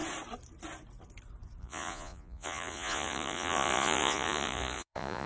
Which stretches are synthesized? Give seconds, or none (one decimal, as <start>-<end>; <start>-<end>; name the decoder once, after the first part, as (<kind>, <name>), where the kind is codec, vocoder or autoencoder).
1.6-5.3 (vocoder, Vocos)

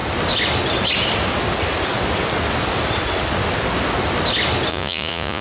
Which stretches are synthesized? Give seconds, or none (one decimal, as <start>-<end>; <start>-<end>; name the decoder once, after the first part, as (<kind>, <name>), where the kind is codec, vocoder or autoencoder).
4.7-5.4 (vocoder, Vocos)

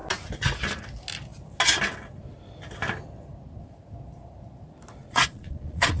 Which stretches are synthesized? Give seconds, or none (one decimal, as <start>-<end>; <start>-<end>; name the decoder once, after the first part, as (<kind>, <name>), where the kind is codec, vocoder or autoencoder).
5.0-6.0 (vocoder, Vocos)